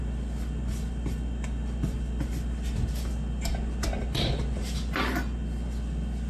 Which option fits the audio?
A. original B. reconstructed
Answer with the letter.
A